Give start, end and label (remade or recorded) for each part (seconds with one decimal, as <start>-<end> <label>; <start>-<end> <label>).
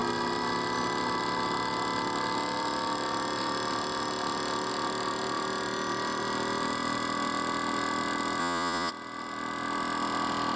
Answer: 0.0-8.4 recorded; 8.4-8.9 remade; 8.9-10.6 recorded